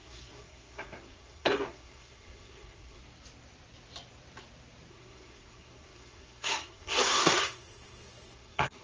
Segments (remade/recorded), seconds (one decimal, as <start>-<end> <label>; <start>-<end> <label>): 0.0-3.0 remade; 3.0-4.9 recorded; 4.9-8.8 remade